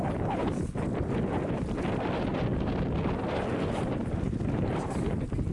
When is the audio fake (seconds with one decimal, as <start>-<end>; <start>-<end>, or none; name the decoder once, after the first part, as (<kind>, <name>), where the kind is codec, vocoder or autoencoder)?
0.0-0.4 (vocoder, BigVGAN v2); 3.7-5.5